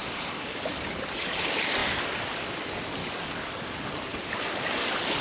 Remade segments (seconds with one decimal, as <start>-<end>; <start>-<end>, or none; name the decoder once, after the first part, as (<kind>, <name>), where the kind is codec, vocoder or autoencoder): 0.0-1.4 (codec, DAC); 3.0-3.6